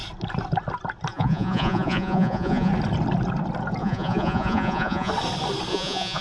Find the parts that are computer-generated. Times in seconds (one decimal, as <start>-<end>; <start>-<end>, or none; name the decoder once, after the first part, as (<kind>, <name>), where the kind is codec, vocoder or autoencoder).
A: 1.1-2.7 (vocoder, Vocos); 3.8-5.1; 5.7-6.2